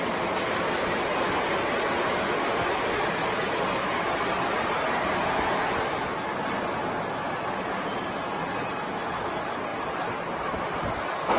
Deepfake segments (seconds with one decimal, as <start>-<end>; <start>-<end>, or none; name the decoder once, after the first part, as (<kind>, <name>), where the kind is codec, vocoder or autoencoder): none